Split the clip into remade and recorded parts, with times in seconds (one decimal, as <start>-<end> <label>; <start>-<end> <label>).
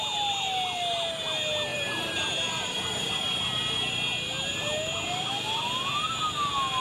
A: 0.0-1.7 recorded; 1.7-3.1 remade; 3.1-6.8 recorded